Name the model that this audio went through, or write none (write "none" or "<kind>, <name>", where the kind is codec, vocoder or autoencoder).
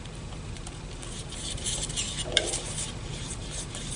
vocoder, BigVGAN v2